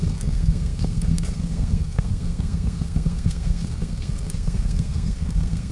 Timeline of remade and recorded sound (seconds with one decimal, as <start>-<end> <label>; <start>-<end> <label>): 0.0-5.7 remade